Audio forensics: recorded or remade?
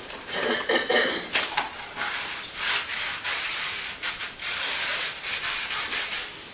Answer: remade